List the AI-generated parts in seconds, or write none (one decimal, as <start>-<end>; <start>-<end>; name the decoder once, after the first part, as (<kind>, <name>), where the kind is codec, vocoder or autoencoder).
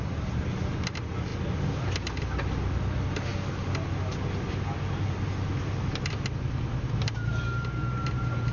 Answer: none